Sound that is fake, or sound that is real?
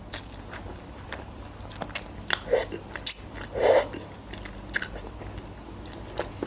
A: real